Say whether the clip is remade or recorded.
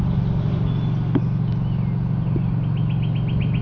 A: recorded